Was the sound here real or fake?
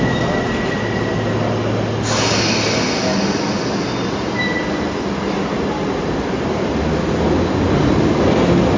real